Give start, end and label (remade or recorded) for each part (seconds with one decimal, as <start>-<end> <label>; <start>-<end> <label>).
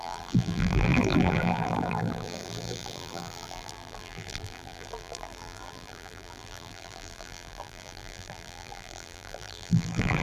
0.0-10.2 remade